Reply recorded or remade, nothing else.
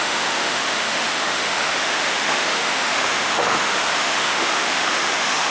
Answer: remade